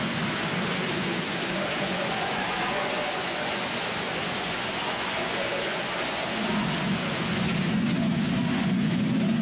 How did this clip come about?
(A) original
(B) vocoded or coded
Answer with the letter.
B